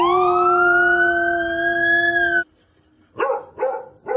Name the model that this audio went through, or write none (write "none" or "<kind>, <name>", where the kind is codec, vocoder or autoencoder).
none